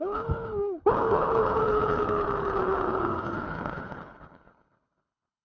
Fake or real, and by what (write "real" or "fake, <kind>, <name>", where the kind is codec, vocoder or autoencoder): fake, codec, HILCodec